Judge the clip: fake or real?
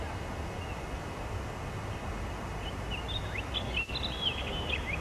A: real